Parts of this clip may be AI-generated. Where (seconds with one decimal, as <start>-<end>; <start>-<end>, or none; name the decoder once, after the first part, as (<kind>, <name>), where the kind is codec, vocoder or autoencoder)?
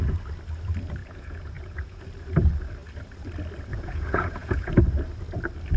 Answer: 1.0-2.0 (vocoder, Vocos); 3.7-4.8